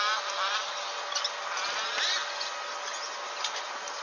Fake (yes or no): no